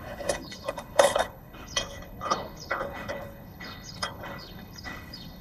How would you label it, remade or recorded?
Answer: remade